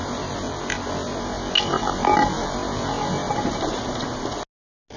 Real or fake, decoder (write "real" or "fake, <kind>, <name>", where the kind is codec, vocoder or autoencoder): real